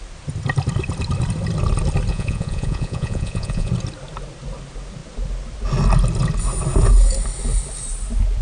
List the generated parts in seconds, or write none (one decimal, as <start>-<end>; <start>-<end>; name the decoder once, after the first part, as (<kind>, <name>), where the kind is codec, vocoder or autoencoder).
2.1-3.7 (vocoder, Vocos)